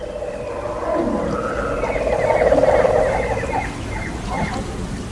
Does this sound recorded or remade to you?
recorded